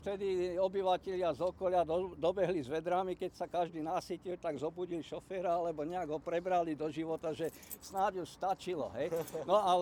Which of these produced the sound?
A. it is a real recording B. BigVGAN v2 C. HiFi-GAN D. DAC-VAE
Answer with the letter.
A